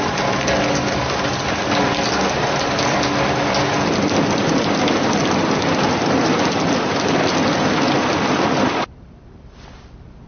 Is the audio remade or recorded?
recorded